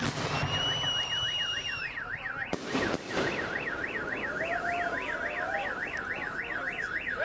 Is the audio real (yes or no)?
yes